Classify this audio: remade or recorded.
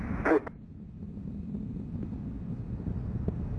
recorded